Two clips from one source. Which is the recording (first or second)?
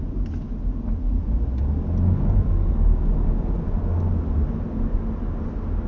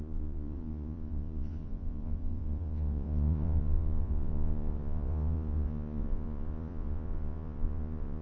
first